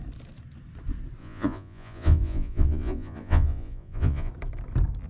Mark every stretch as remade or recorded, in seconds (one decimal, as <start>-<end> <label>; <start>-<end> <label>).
0.0-1.2 recorded; 1.2-4.3 remade; 4.3-5.1 recorded